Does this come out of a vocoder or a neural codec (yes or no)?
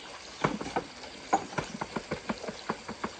no